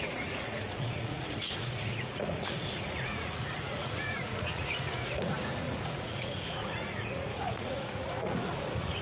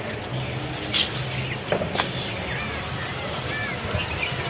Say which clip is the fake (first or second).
first